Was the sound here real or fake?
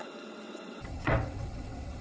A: fake